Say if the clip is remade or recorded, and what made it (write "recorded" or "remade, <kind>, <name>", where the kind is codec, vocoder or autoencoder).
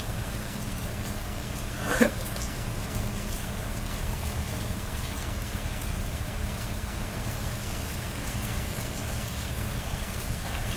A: remade, codec, SNAC